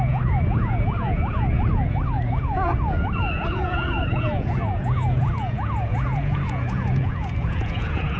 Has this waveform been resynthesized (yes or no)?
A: yes